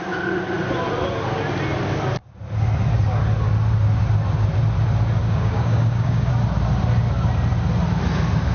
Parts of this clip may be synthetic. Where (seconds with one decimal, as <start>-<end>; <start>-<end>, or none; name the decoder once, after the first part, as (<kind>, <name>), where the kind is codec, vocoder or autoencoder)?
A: 5.2-6.3 (codec, DAC)

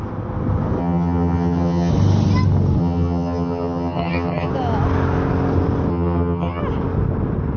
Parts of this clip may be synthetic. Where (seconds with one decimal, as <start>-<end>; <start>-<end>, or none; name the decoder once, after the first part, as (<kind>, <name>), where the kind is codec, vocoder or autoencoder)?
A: 0.8-1.9 (vocoder, HiFi-GAN); 2.8-4.5; 5.9-6.6

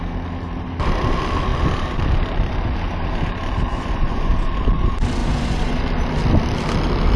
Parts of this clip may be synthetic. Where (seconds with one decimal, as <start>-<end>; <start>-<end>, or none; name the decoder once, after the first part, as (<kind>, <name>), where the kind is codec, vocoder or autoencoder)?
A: 3.7-4.3 (vocoder, Vocos); 5.2-5.8

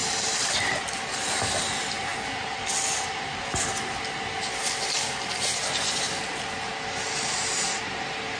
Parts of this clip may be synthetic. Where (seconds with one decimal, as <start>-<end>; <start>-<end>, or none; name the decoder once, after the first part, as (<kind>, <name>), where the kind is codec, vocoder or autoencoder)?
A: none

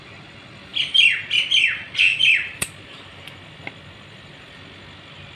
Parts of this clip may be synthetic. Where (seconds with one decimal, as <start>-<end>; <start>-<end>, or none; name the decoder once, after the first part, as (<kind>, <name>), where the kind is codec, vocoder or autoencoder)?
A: 0.7-1.2 (vocoder, BigVGAN v2); 2.1-4.5

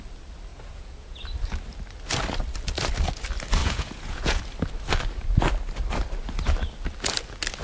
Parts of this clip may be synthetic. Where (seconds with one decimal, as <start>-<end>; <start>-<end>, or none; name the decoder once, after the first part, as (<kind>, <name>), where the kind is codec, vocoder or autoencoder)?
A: 0.5-1.2 (vocoder, Vocos); 3.6-4.4